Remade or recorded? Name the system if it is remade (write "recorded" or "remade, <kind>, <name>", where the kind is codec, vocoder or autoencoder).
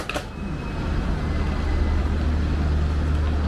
recorded